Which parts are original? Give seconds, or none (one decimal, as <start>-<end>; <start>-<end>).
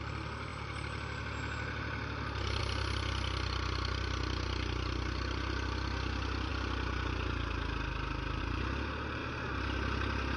0.0-10.4